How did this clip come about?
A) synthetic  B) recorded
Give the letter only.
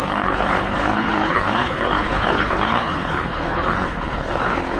A